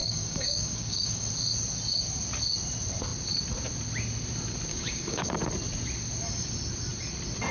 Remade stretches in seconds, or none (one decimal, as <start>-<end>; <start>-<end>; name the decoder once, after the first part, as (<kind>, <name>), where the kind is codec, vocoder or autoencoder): 0.0-1.3 (codec, DAC); 4.7-5.3